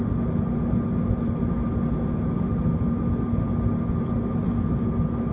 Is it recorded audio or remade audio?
recorded